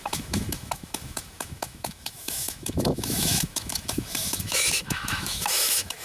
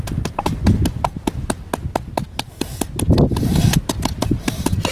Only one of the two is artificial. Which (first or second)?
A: first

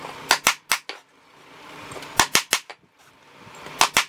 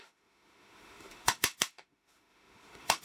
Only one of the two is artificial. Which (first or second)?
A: second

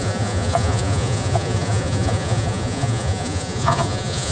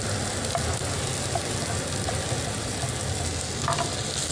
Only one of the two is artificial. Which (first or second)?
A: first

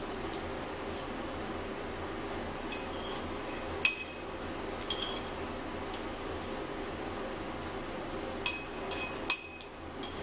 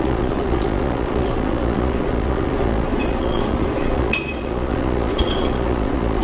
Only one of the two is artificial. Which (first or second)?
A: second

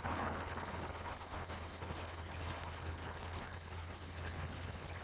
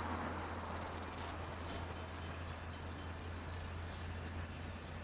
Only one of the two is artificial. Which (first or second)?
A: first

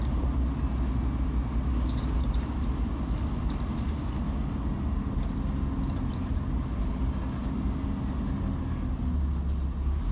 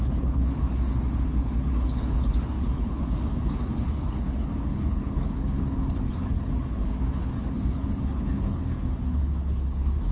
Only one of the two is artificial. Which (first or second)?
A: second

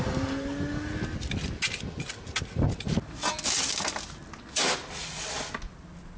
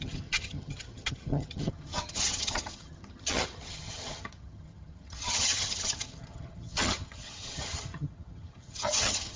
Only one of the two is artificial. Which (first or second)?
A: second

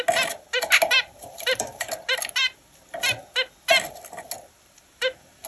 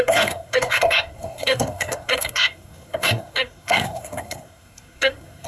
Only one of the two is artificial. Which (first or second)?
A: second